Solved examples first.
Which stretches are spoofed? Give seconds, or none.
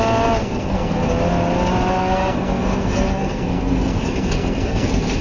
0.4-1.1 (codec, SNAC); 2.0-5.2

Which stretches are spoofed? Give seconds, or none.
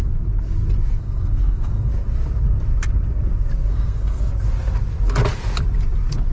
1.0-1.9 (codec, SNAC); 3.7-4.3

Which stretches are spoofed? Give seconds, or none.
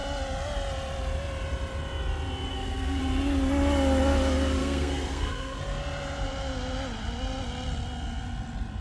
2.5-3.0 (codec, SNAC); 4.6-5.6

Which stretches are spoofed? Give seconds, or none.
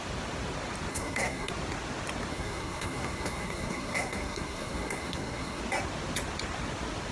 0.9-1.5 (codec, SNAC); 2.3-5.6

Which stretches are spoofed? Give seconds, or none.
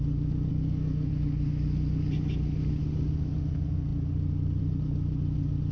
0.5-1.1 (codec, SNAC)